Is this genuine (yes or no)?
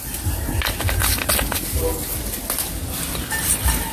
yes